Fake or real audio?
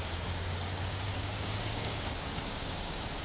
fake